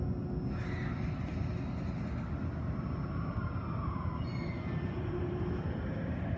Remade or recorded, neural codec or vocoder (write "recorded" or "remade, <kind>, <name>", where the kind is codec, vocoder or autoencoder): recorded